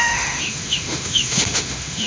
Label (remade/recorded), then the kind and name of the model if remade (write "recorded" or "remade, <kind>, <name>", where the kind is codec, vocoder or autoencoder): remade, autoencoder, DAC-VAE